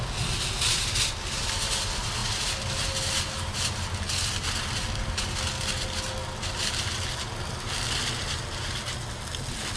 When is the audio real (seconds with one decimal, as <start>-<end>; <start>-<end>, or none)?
0.0-9.8